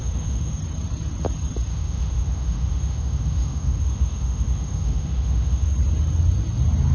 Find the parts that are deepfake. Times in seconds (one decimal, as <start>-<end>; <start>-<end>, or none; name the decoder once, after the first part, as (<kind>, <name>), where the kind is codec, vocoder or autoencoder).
0.0-0.6 (autoencoder, DAC-VAE); 1.7-5.7